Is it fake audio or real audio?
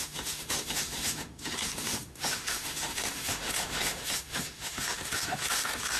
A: fake